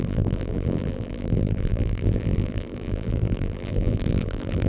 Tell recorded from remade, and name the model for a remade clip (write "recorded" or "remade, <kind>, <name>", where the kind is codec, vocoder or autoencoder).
remade, vocoder, BigVGAN v2